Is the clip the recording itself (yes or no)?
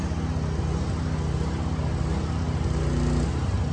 yes